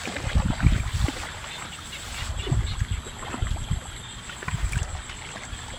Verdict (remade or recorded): recorded